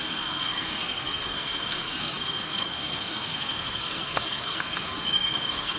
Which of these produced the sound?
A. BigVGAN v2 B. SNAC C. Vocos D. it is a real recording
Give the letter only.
B